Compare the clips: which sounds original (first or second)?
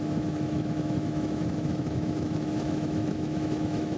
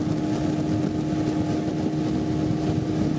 second